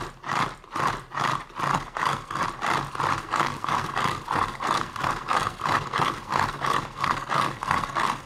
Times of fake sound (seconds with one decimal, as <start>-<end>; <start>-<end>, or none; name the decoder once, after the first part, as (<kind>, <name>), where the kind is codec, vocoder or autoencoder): 1.7-2.4 (codec, SNAC); 3.1-8.3